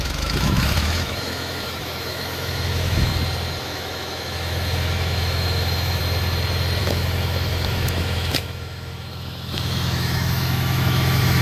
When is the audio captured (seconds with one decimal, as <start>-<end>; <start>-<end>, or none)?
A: 3.1-3.6; 6.0-6.8